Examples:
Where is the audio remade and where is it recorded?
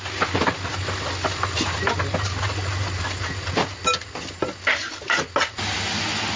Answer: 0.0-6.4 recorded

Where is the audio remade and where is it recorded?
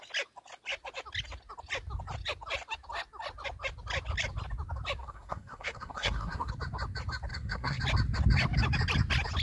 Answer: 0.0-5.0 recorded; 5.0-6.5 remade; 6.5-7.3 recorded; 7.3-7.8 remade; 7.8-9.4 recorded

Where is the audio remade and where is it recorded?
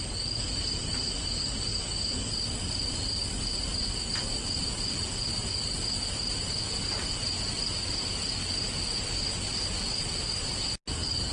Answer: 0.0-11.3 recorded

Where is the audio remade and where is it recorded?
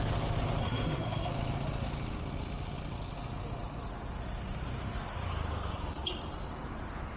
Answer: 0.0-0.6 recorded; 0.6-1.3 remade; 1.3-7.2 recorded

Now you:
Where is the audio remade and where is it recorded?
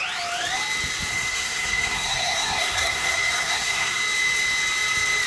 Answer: 0.0-1.1 recorded; 1.1-4.0 remade; 4.0-5.3 recorded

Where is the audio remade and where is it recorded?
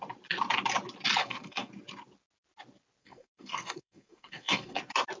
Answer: 0.0-1.2 recorded; 1.2-1.7 remade; 1.7-3.0 recorded; 3.0-4.8 remade; 4.8-5.2 recorded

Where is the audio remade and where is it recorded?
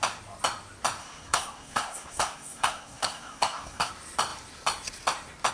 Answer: 0.0-1.0 recorded; 1.0-3.9 remade; 3.9-5.5 recorded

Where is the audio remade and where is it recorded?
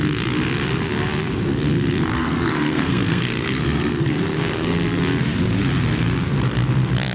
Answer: 0.0-2.1 recorded; 2.1-5.0 remade; 5.0-7.1 recorded